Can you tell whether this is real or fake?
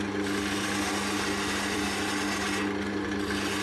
real